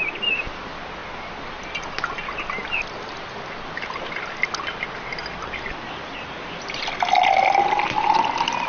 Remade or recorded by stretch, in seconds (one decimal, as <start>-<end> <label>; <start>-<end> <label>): 0.0-8.7 recorded